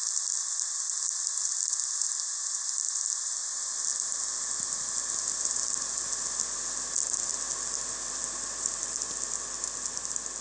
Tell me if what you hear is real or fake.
real